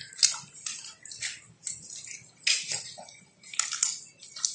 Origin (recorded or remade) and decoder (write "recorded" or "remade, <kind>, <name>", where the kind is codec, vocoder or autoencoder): recorded